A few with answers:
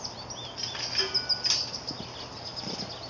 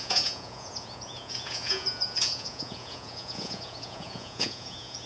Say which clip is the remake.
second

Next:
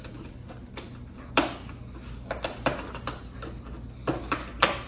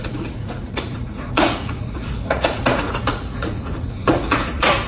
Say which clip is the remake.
second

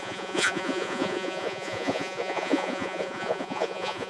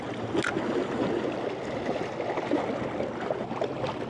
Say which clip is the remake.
first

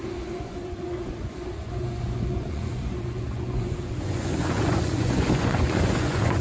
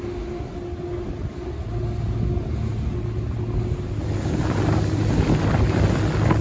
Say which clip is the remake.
first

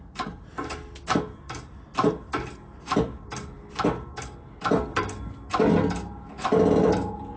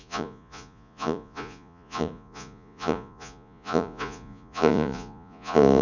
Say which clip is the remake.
second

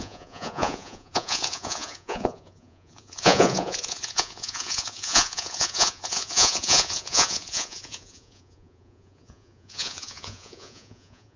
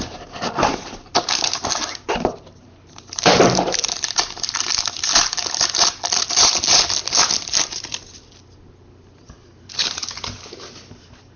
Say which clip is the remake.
first